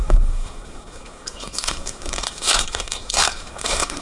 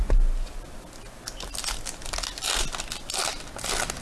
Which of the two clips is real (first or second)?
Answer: second